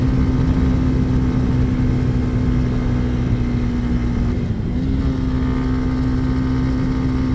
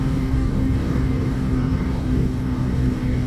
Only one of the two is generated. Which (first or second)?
second